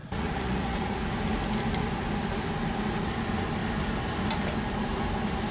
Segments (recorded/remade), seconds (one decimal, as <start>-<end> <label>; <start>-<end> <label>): 0.0-1.0 remade; 1.0-5.5 recorded

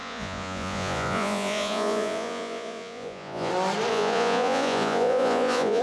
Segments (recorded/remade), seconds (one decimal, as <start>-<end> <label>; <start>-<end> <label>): 0.0-3.5 remade; 3.5-3.9 recorded; 3.9-5.8 remade

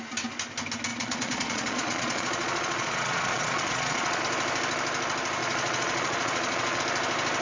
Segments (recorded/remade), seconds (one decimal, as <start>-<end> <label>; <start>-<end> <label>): 0.0-0.9 recorded; 0.9-4.2 remade; 4.2-5.4 recorded; 5.4-6.8 remade; 6.8-7.4 recorded

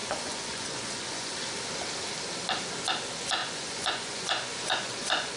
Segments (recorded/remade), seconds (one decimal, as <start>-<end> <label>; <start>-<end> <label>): 0.0-1.4 remade; 1.4-3.4 recorded; 3.4-5.4 remade

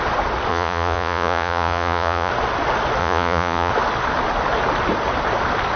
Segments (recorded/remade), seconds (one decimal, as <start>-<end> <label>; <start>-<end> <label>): 0.0-0.5 recorded; 0.5-2.3 remade; 2.3-3.0 recorded; 3.0-3.7 remade; 3.7-5.8 recorded

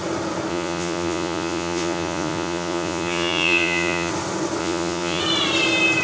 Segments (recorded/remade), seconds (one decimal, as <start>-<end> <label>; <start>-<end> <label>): 0.0-0.5 recorded; 0.5-4.1 remade; 4.1-4.6 recorded; 4.6-5.2 remade; 5.2-6.0 recorded